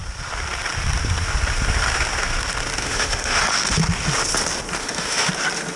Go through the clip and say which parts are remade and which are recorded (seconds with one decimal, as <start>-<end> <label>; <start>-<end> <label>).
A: 0.0-2.8 recorded; 2.8-3.4 remade; 3.4-4.8 recorded; 4.8-5.3 remade; 5.3-5.8 recorded